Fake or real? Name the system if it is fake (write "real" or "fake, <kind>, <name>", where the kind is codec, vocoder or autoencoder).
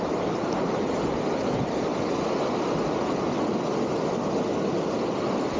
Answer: real